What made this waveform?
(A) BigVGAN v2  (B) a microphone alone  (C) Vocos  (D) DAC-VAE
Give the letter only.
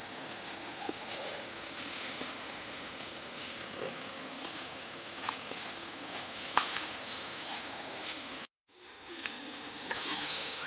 D